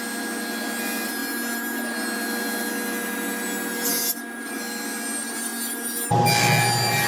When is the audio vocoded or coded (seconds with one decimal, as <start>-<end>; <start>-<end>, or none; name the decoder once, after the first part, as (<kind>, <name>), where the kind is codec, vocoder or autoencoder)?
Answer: none